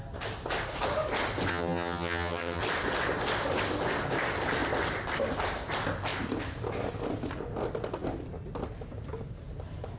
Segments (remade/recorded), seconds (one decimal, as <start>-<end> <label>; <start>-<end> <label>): 0.0-1.5 recorded; 1.5-2.6 remade; 2.6-10.0 recorded